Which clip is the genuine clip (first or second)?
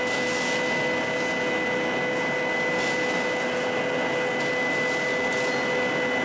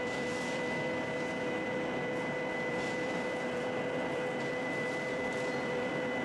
first